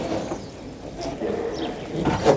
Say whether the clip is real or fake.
real